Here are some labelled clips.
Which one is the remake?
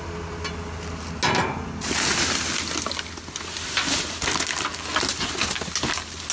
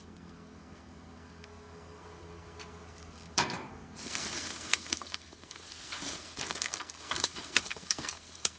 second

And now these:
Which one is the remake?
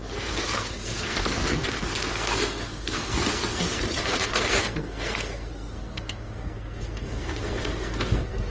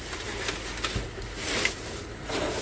first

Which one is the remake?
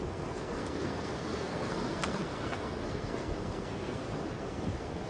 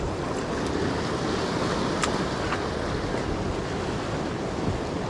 first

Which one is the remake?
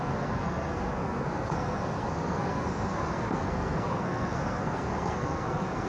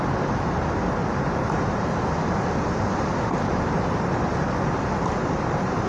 first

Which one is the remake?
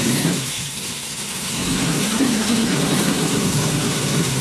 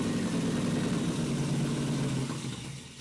first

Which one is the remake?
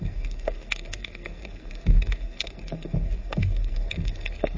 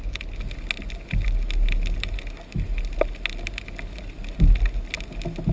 first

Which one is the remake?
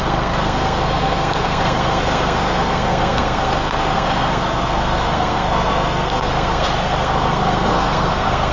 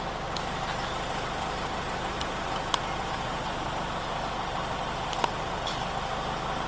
first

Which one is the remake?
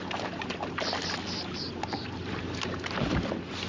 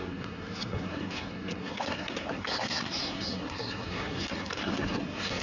second